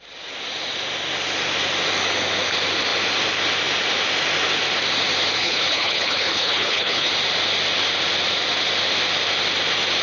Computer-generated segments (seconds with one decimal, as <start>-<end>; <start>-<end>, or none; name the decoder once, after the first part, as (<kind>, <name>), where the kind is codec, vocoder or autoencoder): 5.4-7.1 (codec, HILCodec)